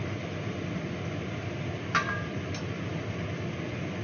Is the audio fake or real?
real